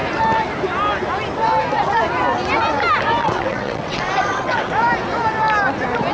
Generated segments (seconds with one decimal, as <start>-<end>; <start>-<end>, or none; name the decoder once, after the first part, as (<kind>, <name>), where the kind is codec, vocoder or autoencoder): 3.2-4.7 (vocoder, WaveNeXt)